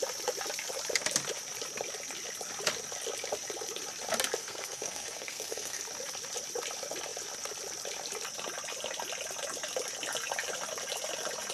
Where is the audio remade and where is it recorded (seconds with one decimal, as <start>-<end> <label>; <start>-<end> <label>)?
0.0-4.4 recorded; 4.4-5.8 remade; 5.8-11.5 recorded